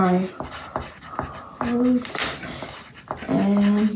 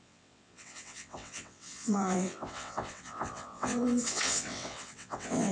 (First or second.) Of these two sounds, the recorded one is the first